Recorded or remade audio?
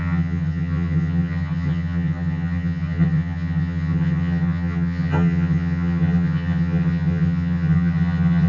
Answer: remade